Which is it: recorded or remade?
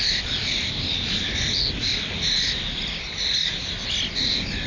recorded